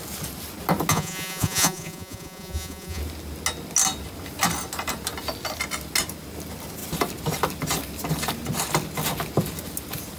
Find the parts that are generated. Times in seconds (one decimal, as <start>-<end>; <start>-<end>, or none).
0.9-3.0